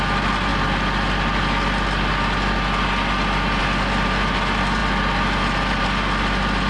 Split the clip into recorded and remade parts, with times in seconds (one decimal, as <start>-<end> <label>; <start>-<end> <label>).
0.0-6.7 recorded